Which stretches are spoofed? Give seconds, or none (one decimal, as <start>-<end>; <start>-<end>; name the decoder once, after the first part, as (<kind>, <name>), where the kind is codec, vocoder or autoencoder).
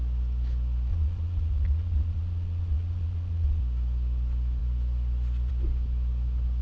0.9-3.6 (vocoder, Vocos)